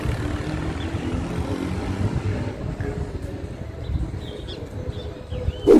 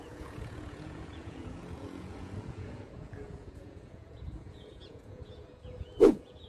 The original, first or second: first